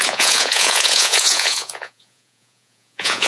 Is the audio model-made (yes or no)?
yes